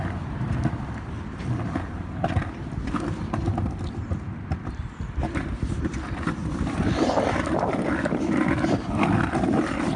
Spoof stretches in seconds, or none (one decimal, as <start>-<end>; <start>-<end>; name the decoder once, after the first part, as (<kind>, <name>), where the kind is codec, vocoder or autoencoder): none